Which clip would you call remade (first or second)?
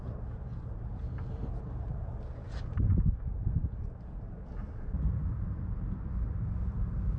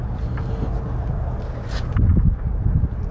first